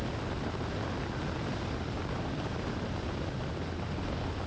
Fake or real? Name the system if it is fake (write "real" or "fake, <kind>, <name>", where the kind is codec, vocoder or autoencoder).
real